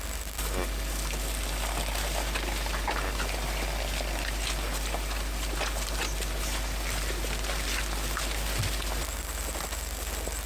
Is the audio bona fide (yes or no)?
yes